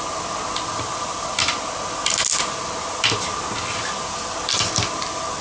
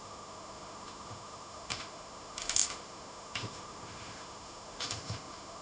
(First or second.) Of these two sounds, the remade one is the second